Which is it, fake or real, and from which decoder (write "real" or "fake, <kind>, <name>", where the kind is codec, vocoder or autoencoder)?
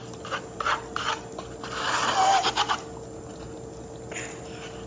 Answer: real